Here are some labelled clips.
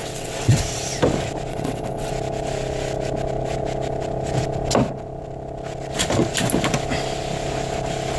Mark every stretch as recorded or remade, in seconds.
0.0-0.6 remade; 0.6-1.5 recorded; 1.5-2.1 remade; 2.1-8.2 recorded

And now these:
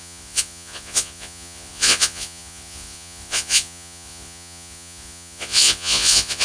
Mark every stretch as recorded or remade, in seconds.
0.0-6.4 remade

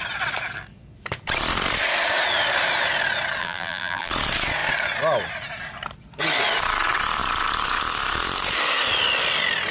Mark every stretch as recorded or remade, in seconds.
0.0-3.4 recorded; 3.4-4.1 remade; 4.1-9.7 recorded

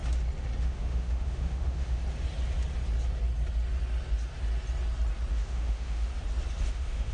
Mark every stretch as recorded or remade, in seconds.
0.0-0.6 recorded; 0.6-2.0 remade; 2.0-5.3 recorded; 5.3-6.1 remade; 6.1-6.6 recorded; 6.6-7.1 remade

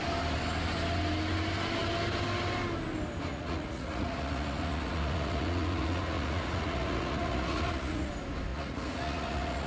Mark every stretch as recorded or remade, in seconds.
0.0-3.3 recorded; 3.3-8.1 remade; 8.1-8.5 recorded; 8.5-9.7 remade

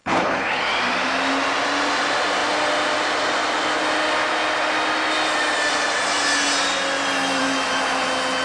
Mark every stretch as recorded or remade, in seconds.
0.0-0.6 remade; 0.6-8.4 recorded